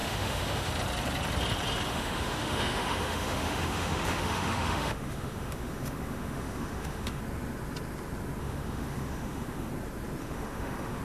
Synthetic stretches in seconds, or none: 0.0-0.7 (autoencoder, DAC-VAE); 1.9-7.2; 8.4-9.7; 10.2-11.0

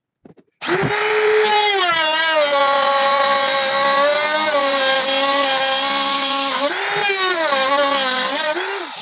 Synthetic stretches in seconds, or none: 6.1-6.7 (autoencoder, DAC-VAE)

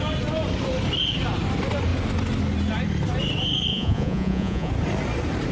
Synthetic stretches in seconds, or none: 3.7-4.7 (vocoder, Vocos)

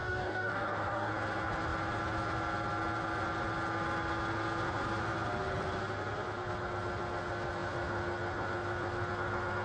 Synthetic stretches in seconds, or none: 0.0-1.1 (codec, DAC)

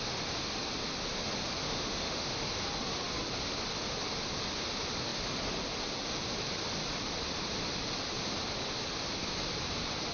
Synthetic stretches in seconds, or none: 1.6-2.5 (autoencoder, DAC-VAE)

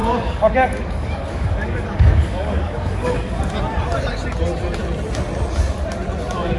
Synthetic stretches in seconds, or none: 0.0-3.4 (codec, DAC)